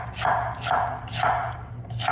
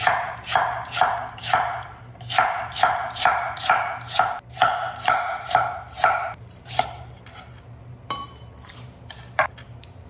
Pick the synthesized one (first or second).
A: second